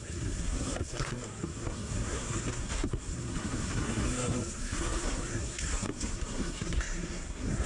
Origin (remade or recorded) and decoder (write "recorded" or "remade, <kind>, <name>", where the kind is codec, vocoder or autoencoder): remade, codec, SNAC